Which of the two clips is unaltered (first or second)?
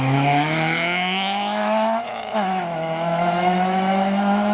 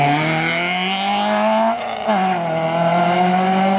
second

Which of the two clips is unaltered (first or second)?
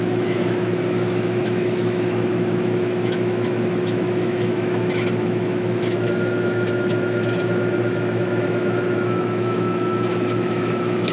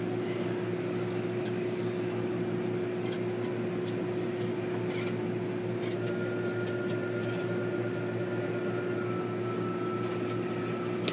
second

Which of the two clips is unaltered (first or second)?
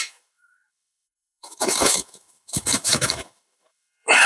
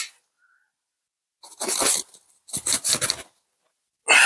second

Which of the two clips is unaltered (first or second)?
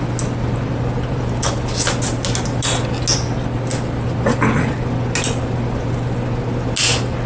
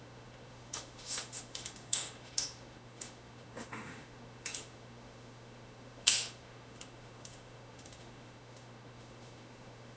first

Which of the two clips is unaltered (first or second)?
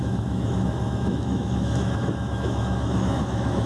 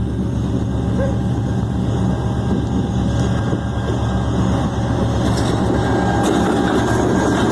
second